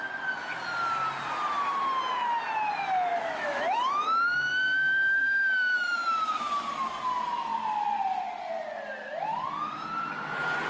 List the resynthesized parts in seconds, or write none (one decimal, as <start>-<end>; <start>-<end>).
3.1-6.4